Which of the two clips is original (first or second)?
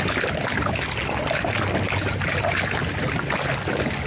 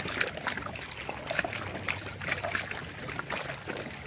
first